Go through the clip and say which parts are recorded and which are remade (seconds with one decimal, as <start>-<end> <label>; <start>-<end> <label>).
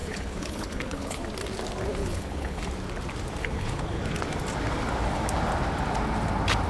0.0-1.2 remade; 1.2-2.0 recorded; 2.0-2.6 remade; 2.6-3.4 recorded; 3.4-4.0 remade; 4.0-6.7 recorded